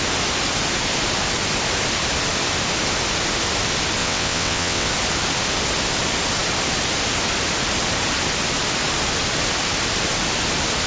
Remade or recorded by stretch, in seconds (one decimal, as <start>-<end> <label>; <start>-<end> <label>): 0.0-4.0 recorded; 4.0-4.9 remade; 4.9-10.9 recorded